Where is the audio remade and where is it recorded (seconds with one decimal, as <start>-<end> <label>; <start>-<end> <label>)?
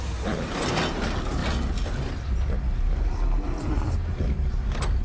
0.0-5.0 recorded